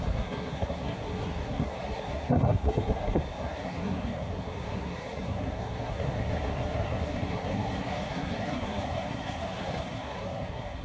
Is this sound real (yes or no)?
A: no